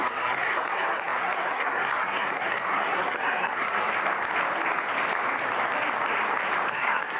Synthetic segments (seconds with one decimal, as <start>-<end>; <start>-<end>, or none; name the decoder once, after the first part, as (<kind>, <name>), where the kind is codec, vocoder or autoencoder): 0.0-3.9 (codec, SNAC); 6.7-7.2